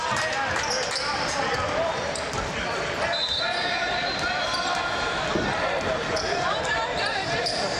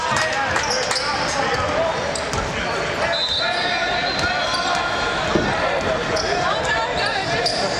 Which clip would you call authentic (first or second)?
second